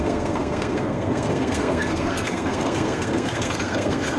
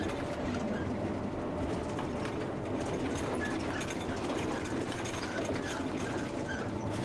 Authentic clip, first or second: second